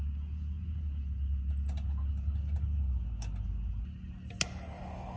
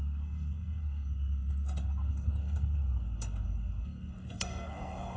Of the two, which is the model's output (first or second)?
second